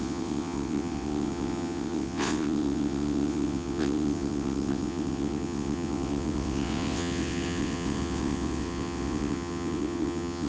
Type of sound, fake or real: fake